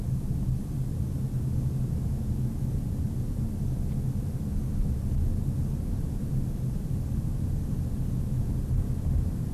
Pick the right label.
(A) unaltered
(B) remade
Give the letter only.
A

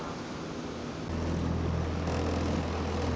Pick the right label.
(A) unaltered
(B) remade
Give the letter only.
A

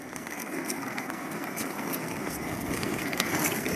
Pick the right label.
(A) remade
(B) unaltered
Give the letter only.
A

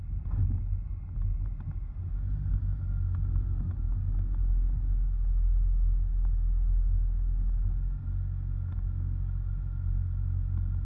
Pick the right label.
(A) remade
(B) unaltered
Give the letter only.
B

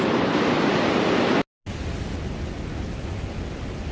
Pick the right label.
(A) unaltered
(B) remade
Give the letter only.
A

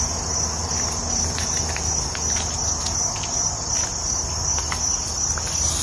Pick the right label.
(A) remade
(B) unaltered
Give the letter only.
B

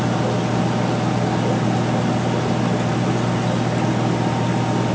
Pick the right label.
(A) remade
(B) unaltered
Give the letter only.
B